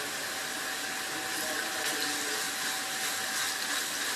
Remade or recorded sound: recorded